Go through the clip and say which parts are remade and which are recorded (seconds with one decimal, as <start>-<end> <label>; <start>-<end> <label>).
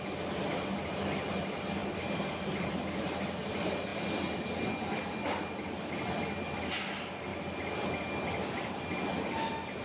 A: 0.0-9.8 recorded